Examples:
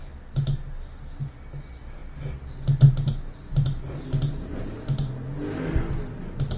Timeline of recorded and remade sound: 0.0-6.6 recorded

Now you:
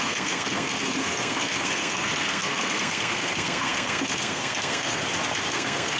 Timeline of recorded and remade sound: 0.0-5.0 remade; 5.0-5.5 recorded; 5.5-6.0 remade

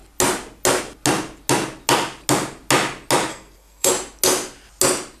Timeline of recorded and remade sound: 0.0-3.3 recorded; 3.3-3.9 remade; 3.9-5.2 recorded

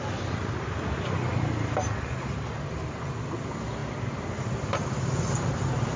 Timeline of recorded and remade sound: 0.0-6.0 recorded

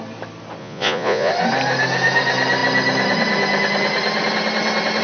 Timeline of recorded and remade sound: 0.0-0.6 recorded; 0.6-1.3 remade; 1.3-5.0 recorded

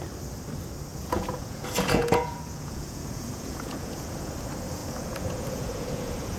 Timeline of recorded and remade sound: 0.0-0.9 recorded; 0.9-4.3 remade; 4.3-4.8 recorded; 4.8-6.4 remade

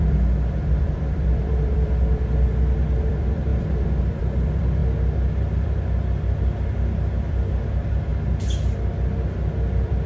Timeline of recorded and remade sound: 0.0-4.8 remade; 4.8-5.4 recorded; 5.4-8.1 remade; 8.1-9.7 recorded; 9.7-10.1 remade

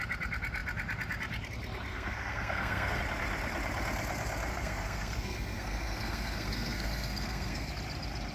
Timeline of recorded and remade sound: 0.0-1.9 recorded; 1.9-3.0 remade; 3.0-4.5 recorded; 4.5-7.7 remade; 7.7-8.3 recorded